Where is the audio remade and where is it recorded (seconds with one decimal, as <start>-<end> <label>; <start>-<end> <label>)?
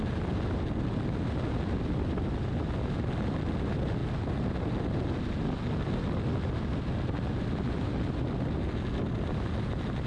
0.0-10.1 recorded